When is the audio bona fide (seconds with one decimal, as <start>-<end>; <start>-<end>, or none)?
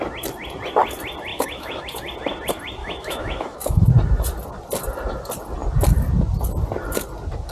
0.0-1.3; 1.8-2.8; 3.9-7.5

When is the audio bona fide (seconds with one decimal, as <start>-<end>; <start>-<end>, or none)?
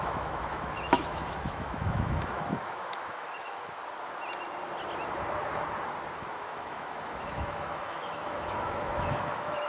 3.8-6.2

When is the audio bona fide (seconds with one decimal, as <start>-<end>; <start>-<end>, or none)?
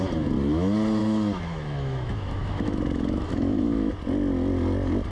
0.0-1.0; 3.9-5.1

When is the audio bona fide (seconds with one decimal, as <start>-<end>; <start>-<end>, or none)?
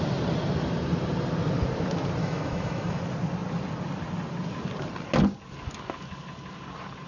0.0-2.2; 3.0-7.1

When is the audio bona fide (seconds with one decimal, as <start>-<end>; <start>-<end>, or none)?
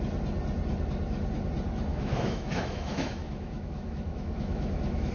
0.0-1.9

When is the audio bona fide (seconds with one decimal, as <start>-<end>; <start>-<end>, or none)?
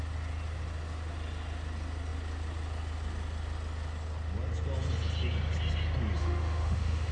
0.0-6.2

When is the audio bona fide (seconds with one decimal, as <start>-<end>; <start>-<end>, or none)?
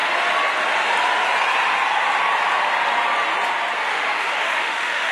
0.0-3.9